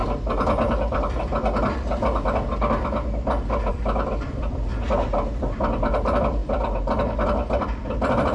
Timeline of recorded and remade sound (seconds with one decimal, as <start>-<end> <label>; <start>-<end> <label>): 0.0-3.7 recorded; 3.7-4.7 remade; 4.7-5.3 recorded; 5.3-6.4 remade; 6.4-7.6 recorded; 7.6-8.3 remade